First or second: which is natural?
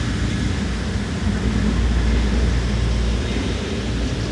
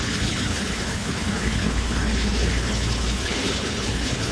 first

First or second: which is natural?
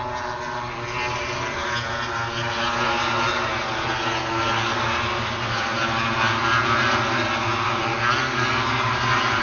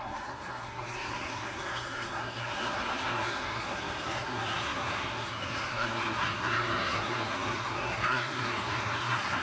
first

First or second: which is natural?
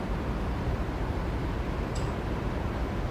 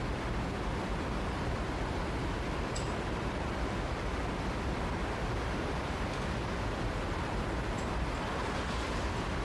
first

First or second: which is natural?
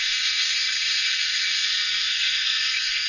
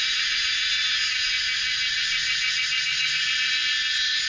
second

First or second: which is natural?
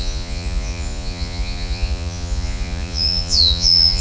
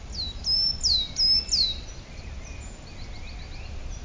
second